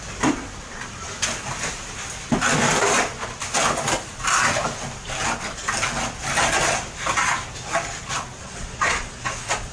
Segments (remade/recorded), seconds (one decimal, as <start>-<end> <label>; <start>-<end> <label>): 0.0-8.4 recorded; 8.4-9.7 remade